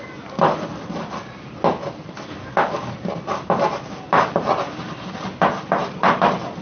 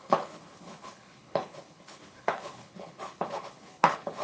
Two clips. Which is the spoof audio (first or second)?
second